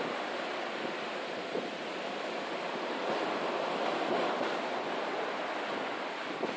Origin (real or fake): real